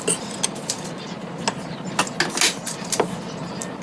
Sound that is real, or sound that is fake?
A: real